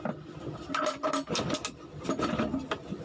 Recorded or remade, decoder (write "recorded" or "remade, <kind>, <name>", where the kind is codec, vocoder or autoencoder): recorded